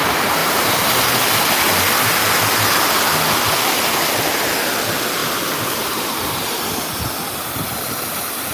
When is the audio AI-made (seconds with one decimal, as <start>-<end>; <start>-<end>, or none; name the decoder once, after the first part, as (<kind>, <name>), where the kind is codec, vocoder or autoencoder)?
0.4-1.0 (vocoder, BigVGAN v2); 5.2-7.0